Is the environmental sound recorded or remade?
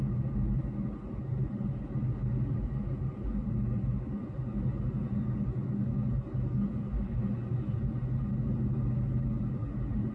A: recorded